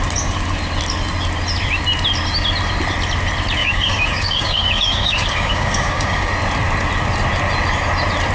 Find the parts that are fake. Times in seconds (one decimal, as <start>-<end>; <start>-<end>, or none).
3.6-6.3